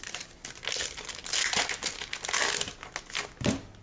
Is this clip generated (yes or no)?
no